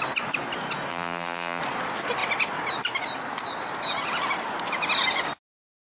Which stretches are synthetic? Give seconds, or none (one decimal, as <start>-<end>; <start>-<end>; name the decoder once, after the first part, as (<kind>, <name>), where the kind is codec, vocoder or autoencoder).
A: 0.9-1.6 (vocoder, BigVGAN v2)